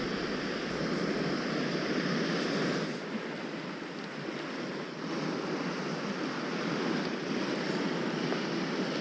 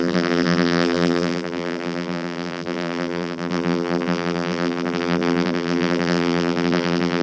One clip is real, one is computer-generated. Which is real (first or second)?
first